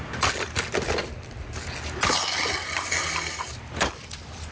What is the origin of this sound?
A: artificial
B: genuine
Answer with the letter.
B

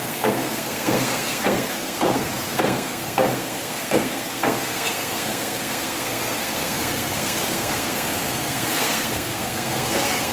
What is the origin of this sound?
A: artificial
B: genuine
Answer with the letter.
A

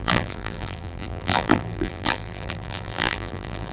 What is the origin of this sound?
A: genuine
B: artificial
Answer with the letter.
B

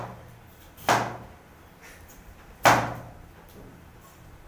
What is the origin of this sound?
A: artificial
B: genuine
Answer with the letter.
B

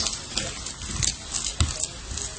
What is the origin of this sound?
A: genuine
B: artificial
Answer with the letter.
A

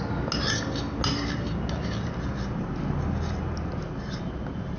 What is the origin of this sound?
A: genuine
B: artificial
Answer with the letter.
A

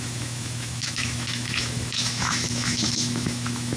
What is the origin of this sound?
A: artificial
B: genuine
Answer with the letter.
A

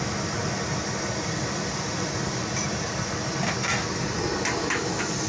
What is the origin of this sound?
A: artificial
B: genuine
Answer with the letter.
B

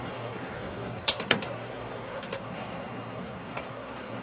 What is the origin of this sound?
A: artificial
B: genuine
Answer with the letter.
A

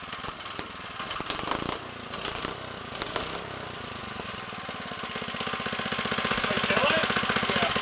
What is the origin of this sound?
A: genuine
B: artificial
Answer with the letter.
A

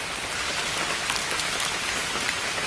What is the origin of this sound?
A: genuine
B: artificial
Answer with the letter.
A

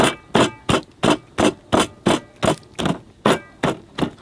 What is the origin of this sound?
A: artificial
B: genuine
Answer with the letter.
B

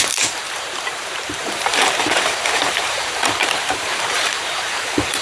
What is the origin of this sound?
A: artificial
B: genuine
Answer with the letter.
A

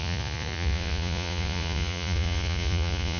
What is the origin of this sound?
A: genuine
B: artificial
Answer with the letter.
B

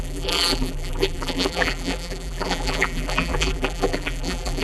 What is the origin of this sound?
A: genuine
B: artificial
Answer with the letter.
B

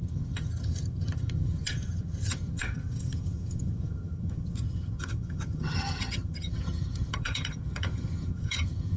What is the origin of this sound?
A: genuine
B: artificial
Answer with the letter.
B